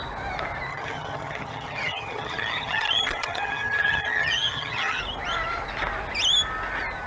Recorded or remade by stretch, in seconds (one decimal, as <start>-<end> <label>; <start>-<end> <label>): 0.0-0.7 recorded; 0.7-5.0 remade; 5.0-7.1 recorded